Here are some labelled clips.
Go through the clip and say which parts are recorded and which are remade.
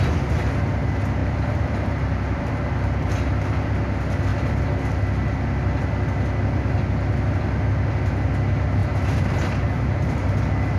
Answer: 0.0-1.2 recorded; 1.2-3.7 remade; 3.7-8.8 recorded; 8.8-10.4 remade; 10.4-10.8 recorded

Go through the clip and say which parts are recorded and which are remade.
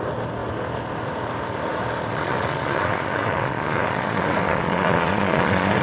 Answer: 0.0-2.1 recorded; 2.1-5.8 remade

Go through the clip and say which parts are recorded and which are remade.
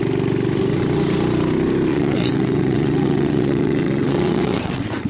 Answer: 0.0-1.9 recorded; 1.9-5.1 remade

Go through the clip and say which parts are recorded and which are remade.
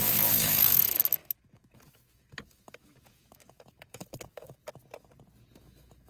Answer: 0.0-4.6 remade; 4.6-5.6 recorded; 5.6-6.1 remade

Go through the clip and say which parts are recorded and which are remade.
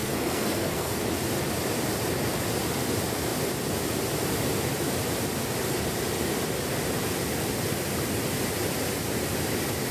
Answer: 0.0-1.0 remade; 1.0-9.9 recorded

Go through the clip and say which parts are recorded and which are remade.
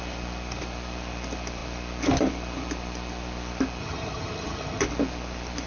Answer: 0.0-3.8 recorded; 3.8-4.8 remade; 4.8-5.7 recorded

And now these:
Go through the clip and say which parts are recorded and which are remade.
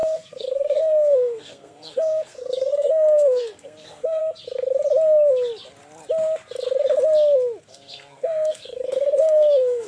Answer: 0.0-4.2 remade; 4.2-7.7 recorded; 7.7-9.9 remade